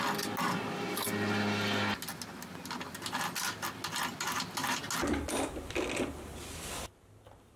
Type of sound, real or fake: real